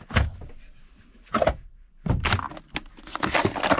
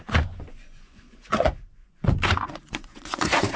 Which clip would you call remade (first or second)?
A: second